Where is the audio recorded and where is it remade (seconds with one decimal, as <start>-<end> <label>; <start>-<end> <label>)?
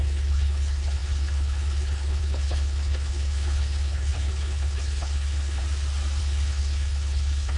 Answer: 0.0-5.6 remade; 5.6-6.2 recorded; 6.2-7.6 remade